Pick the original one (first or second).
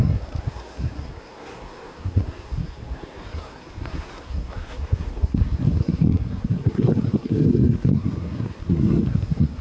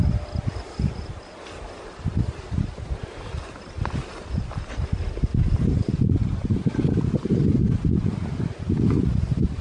second